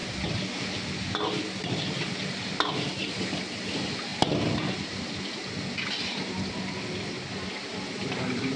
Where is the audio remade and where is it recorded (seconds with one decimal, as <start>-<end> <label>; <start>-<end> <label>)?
0.0-8.6 recorded